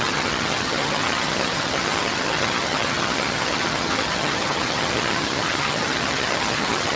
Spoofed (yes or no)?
yes